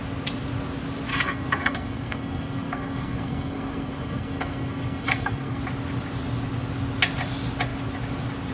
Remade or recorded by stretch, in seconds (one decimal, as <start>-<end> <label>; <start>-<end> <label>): 0.0-1.1 recorded; 1.1-5.6 remade; 5.6-8.5 recorded